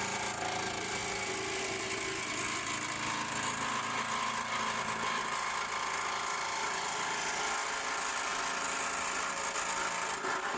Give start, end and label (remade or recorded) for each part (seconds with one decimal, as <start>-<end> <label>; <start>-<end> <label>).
0.0-10.6 recorded